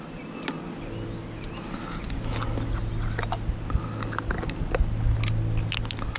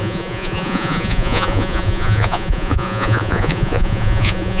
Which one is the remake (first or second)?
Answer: second